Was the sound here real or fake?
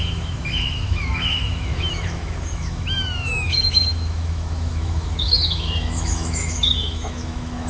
fake